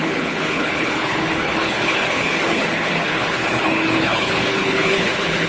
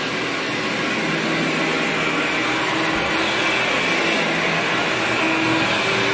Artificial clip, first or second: first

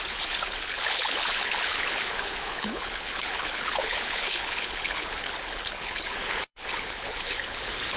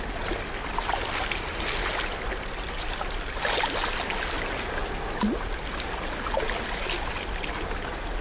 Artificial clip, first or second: first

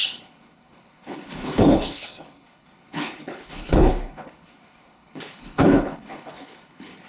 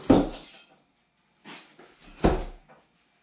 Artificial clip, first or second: first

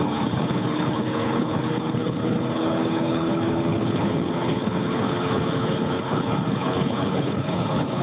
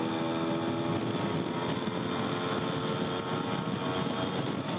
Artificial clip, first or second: first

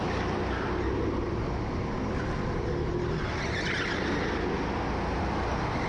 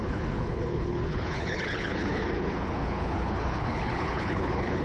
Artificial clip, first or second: second